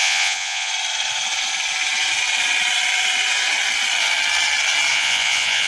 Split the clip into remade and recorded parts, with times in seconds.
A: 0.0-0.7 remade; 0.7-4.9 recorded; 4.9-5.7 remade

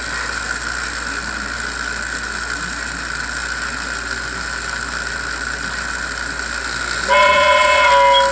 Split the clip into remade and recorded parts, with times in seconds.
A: 0.0-7.2 recorded; 7.2-7.9 remade; 7.9-8.3 recorded

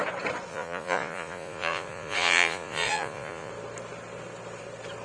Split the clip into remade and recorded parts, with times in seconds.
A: 0.0-0.5 recorded; 0.5-3.5 remade; 3.5-5.0 recorded

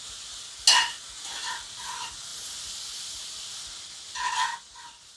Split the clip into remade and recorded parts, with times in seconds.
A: 0.0-5.2 recorded

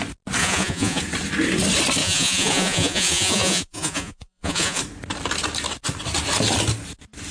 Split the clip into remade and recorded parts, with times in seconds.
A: 0.0-0.4 recorded; 0.4-1.0 remade; 1.0-2.0 recorded; 2.0-4.8 remade; 4.8-7.3 recorded

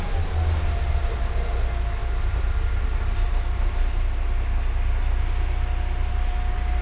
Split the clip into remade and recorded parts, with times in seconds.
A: 0.0-6.8 recorded

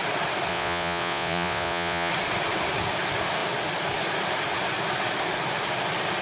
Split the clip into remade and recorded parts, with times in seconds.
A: 0.0-0.5 recorded; 0.5-2.1 remade; 2.1-6.2 recorded

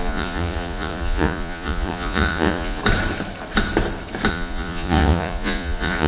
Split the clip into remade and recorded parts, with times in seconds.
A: 0.0-2.8 remade; 2.8-4.3 recorded; 4.3-6.1 remade